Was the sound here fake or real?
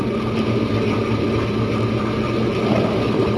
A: real